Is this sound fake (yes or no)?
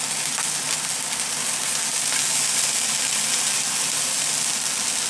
no